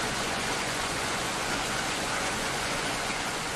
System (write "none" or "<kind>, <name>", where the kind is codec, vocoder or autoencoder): vocoder, Vocos